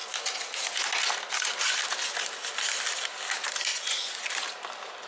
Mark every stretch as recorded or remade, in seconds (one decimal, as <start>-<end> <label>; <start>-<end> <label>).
0.0-3.7 recorded; 3.7-4.3 remade; 4.3-5.1 recorded